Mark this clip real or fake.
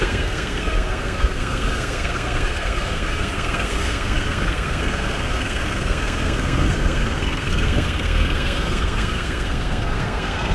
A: fake